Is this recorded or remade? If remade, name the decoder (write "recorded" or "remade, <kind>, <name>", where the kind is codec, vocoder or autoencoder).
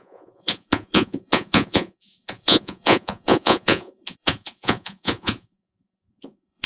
remade, vocoder, Vocos